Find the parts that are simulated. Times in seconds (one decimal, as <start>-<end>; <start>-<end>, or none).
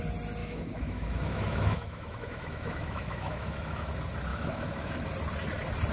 0.4-3.9; 4.3-4.9